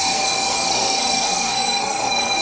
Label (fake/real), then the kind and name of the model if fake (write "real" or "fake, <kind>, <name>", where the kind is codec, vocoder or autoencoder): fake, codec, SNAC